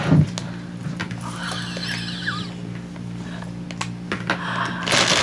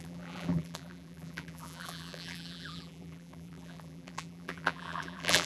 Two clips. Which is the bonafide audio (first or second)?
first